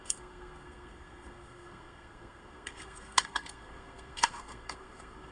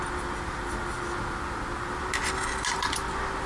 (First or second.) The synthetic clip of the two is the first